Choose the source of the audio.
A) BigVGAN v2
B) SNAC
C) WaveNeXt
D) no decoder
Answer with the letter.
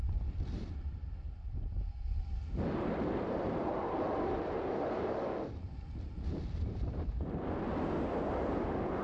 D